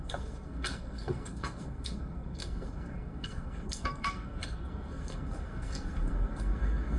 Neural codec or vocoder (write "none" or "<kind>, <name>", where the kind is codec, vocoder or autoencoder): codec, SNAC